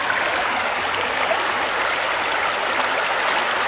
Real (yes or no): yes